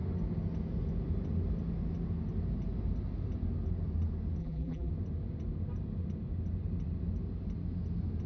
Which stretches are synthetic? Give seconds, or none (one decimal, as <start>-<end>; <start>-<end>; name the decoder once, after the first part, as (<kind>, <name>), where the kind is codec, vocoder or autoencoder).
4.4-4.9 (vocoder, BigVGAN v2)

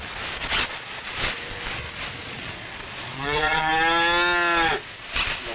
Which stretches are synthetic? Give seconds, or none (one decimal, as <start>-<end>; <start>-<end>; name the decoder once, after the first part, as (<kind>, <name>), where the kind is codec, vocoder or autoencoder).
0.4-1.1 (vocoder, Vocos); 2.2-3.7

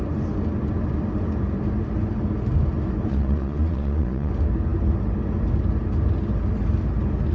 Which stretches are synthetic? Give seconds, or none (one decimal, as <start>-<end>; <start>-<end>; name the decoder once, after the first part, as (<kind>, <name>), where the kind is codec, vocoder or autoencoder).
3.1-4.3 (vocoder, Vocos)